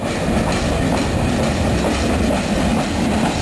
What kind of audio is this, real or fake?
real